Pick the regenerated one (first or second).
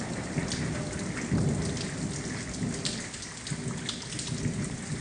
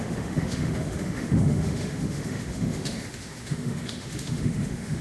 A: second